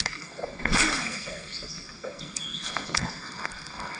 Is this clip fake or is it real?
fake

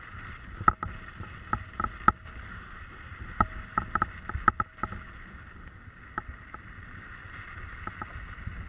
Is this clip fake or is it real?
real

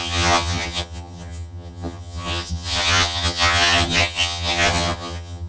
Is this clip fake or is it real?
fake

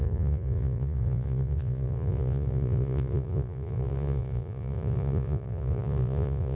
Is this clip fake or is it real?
fake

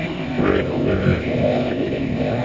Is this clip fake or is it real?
fake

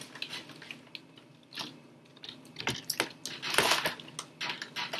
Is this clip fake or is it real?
real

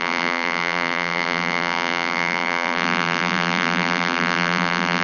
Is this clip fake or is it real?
fake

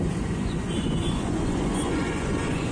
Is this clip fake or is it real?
fake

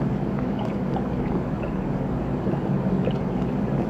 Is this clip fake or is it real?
fake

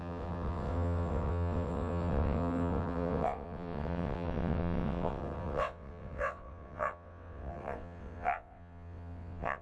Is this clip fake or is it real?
fake